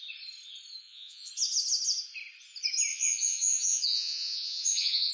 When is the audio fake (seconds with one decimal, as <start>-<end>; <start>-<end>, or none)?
0.8-1.3; 2.9-5.1